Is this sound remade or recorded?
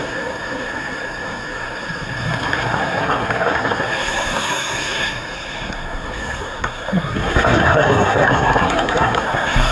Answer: remade